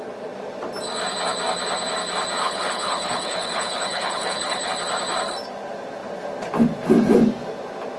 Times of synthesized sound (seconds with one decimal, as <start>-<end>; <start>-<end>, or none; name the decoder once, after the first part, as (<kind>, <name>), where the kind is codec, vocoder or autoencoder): 2.4-4.7 (codec, HILCodec)